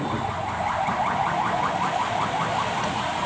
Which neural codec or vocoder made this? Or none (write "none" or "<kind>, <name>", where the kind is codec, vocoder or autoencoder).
none